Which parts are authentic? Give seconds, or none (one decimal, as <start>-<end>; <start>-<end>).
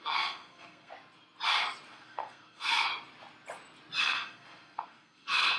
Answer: 0.9-1.9; 2.9-4.0